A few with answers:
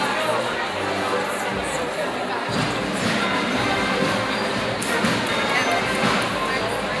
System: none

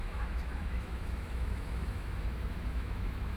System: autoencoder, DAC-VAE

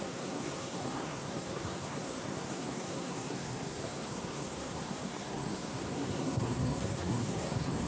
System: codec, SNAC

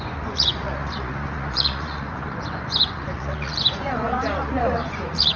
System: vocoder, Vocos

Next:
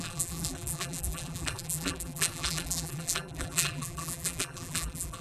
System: vocoder, BigVGAN v2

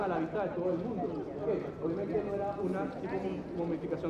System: none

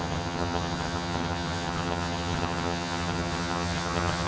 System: vocoder, HiFi-GAN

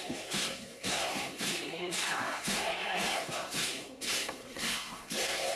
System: codec, SNAC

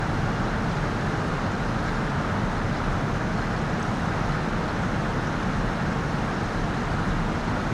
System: none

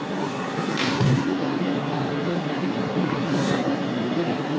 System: codec, SNAC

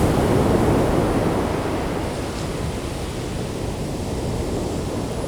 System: none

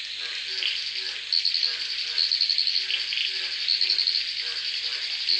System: none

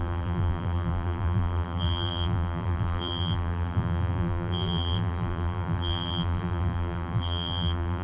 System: vocoder, BigVGAN v2